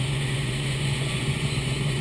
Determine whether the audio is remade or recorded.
remade